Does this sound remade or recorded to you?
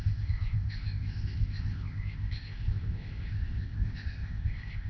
remade